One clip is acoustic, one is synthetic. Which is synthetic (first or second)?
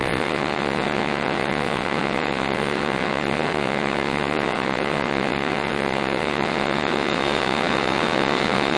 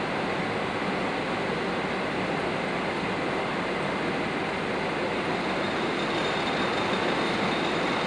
first